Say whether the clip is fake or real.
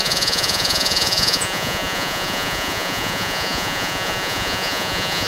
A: fake